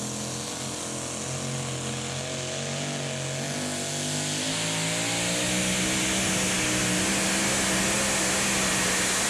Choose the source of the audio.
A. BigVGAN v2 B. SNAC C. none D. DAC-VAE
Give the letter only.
C